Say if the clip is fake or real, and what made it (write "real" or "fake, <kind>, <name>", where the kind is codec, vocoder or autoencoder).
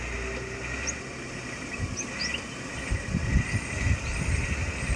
real